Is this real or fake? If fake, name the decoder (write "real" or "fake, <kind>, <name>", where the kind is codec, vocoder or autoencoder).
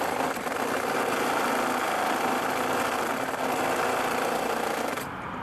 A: real